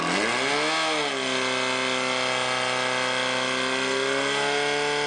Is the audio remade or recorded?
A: recorded